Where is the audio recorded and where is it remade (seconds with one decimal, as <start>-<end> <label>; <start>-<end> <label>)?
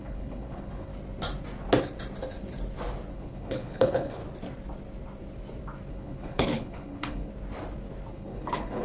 0.0-0.9 remade; 0.9-3.1 recorded; 3.1-4.2 remade; 4.2-5.9 recorded; 5.9-7.3 remade; 7.3-8.1 recorded; 8.1-8.8 remade